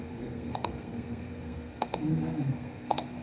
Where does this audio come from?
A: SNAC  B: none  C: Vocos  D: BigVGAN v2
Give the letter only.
A